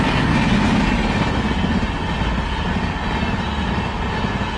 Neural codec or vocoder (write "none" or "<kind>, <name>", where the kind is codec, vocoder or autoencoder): none